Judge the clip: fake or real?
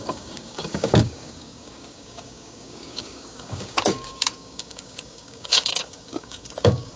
fake